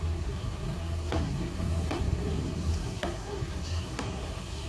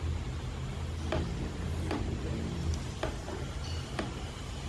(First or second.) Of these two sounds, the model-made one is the first